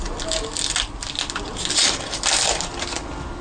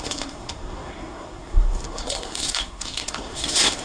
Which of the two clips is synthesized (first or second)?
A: second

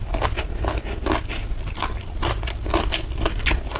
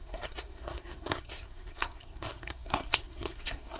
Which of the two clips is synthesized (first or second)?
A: second